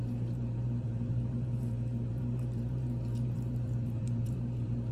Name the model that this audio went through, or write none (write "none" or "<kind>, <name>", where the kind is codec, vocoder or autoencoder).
vocoder, BigVGAN v2